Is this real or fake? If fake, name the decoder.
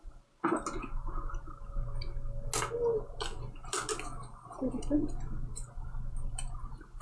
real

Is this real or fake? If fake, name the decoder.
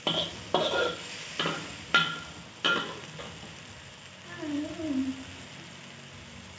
real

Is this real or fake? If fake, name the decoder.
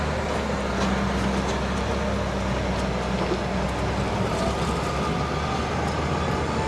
real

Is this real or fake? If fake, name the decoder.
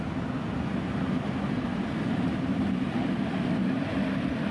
real